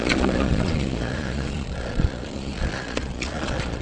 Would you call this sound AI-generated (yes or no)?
yes